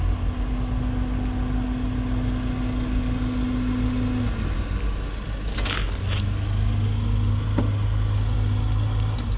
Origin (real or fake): real